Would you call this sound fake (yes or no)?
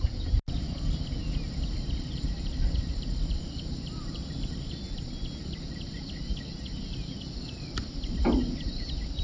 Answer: no